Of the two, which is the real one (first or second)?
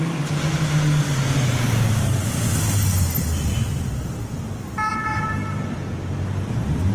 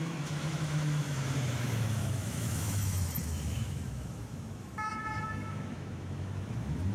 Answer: first